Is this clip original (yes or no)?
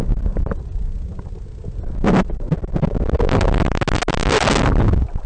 yes